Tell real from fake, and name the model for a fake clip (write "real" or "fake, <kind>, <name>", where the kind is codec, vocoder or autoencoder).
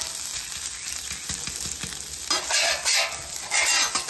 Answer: real